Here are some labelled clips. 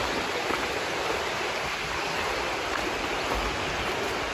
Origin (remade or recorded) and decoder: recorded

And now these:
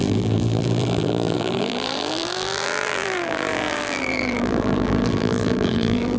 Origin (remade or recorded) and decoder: remade, vocoder, BigVGAN v2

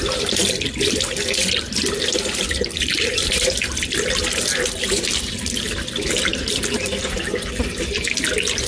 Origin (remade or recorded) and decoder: recorded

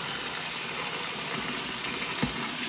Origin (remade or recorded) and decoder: recorded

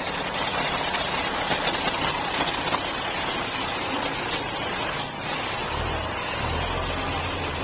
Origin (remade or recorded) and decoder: remade, vocoder, BigVGAN v2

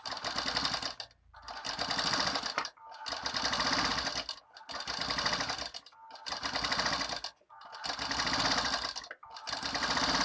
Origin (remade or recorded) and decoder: recorded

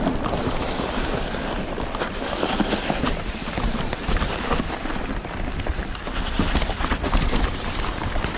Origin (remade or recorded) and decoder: recorded